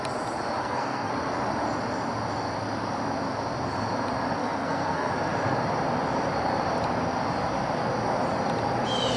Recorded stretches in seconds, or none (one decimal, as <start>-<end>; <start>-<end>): 0.0-0.6; 1.1-4.4; 5.1-9.2